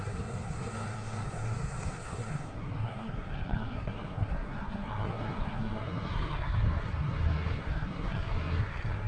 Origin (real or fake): fake